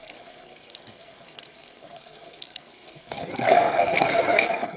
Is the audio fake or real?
fake